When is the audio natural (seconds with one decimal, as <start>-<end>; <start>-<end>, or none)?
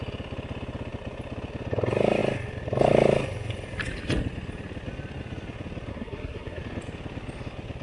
0.0-5.9; 6.6-7.8